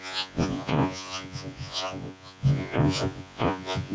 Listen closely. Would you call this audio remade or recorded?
remade